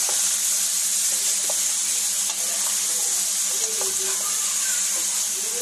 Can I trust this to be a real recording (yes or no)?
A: yes